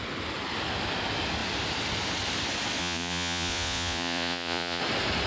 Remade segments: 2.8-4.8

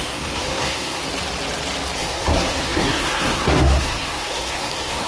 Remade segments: 0.0-1.0; 2.0-5.1

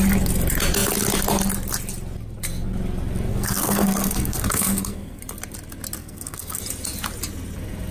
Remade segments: 3.3-5.2; 6.0-6.6

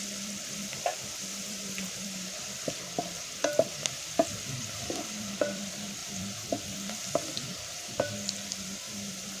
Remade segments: 0.0-9.4

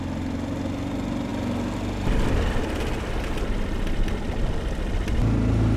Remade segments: none

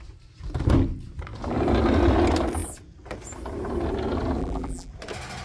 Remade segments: 4.4-4.9

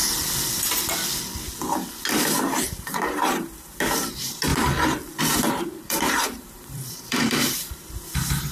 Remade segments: 2.1-4.5; 5.2-8.5

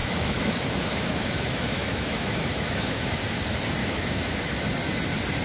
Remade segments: 0.0-3.2; 3.8-4.6